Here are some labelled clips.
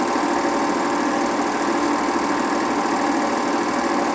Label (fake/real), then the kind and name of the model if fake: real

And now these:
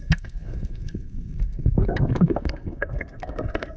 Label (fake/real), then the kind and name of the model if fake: fake, codec, SNAC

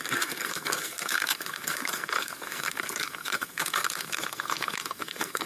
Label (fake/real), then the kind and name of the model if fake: fake, codec, SNAC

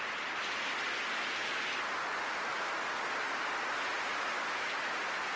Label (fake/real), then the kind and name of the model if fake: real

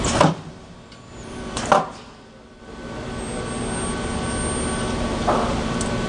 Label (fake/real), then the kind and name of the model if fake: real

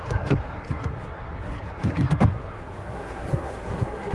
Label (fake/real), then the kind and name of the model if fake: fake, codec, SNAC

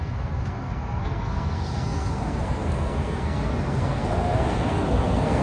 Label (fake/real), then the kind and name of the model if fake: fake, codec, SNAC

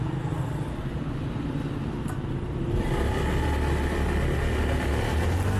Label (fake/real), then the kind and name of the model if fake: real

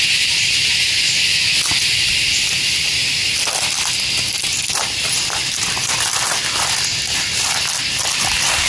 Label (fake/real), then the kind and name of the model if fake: real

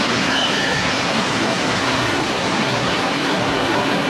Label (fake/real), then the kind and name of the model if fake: fake, codec, SNAC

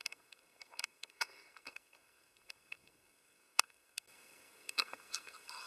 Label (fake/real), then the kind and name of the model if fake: fake, codec, SNAC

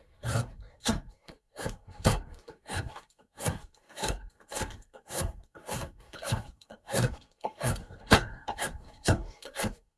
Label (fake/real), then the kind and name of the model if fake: fake, codec, SNAC